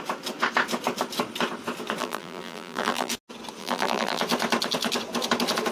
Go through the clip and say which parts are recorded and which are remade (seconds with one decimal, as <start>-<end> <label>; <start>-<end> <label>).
0.0-2.0 recorded; 2.0-3.1 remade; 3.1-3.6 recorded; 3.6-4.2 remade; 4.2-5.7 recorded